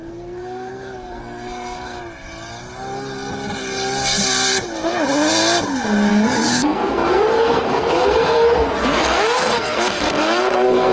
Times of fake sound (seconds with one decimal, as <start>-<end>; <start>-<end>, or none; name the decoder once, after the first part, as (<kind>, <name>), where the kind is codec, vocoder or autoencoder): 0.0-2.0 (codec, SNAC); 6.1-10.9